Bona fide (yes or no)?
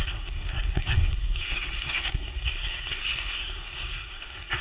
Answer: no